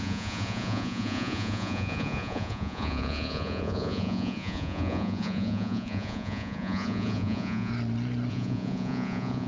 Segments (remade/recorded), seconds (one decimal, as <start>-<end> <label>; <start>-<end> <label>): 0.0-7.7 remade; 7.7-8.3 recorded; 8.3-9.5 remade